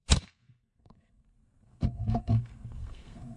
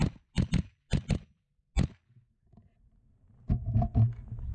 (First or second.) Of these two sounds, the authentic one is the second